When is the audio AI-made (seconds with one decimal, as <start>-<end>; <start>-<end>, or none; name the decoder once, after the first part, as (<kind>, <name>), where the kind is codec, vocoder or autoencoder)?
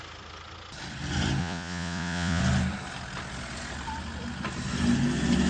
1.4-2.4 (vocoder, Vocos)